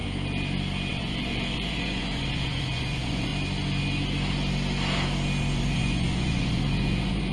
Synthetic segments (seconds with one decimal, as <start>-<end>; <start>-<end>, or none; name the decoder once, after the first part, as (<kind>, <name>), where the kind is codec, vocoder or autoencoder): 0.9-3.3 (vocoder, Vocos); 5.4-7.3

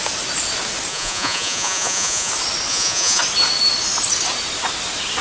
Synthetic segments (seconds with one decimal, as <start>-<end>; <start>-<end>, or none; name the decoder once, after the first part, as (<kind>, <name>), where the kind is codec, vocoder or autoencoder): 0.9-2.3 (vocoder, Vocos); 2.7-3.2